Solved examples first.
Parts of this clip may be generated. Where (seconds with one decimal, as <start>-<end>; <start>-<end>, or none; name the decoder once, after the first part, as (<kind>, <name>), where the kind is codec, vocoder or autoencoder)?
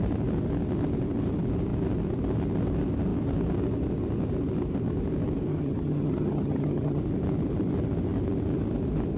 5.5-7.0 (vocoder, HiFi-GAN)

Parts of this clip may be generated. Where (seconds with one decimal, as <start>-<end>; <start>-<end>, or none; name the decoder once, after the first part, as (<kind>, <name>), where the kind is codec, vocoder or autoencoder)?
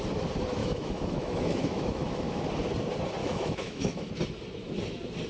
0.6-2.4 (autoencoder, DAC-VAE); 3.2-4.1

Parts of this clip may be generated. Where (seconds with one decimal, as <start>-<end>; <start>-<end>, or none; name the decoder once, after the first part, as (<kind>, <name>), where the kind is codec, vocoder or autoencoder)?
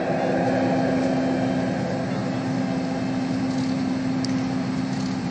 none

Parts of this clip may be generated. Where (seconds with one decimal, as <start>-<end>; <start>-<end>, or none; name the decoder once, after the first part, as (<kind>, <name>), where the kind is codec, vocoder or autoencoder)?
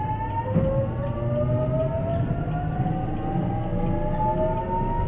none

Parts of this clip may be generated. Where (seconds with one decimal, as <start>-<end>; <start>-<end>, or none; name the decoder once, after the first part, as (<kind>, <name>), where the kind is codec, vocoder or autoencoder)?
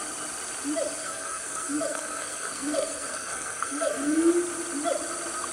1.0-4.3 (codec, SNAC)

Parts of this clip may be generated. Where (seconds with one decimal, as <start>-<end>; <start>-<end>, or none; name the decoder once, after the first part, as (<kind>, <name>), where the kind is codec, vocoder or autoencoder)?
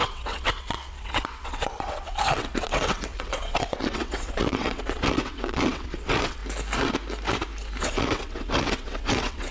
0.0-6.4 (vocoder, WaveNeXt); 7.8-9.5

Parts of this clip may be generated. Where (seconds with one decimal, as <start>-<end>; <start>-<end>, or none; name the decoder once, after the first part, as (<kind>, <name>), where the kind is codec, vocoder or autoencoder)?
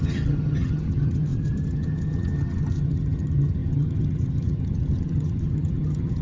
0.0-6.2 (vocoder, HiFi-GAN)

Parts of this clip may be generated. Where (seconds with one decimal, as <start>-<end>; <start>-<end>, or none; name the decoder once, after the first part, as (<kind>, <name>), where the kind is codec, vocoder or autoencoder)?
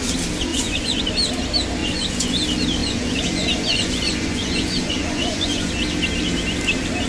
0.5-1.1 (vocoder, Vocos); 1.8-2.4; 2.8-5.7